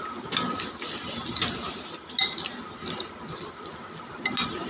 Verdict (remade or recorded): recorded